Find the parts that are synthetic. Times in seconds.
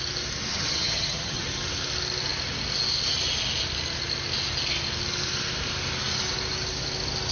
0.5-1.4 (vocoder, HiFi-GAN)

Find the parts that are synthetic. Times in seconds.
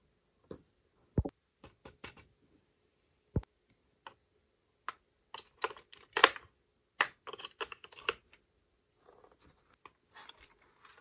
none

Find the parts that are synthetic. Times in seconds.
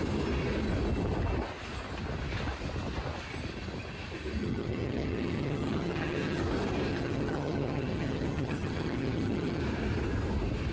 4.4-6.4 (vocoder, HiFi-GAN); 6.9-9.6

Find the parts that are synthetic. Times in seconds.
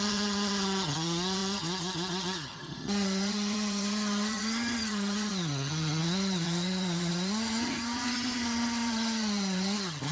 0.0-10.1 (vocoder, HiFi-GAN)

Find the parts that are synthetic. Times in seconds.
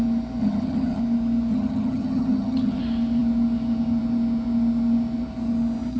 0.4-1.0 (vocoder, HiFi-GAN); 1.5-2.8